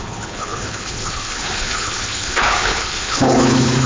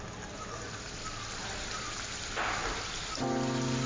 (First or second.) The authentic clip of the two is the second